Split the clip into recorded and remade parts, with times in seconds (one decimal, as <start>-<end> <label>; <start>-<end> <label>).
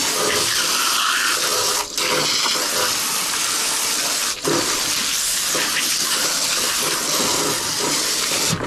0.0-8.7 recorded